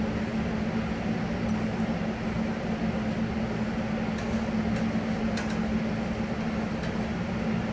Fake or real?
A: real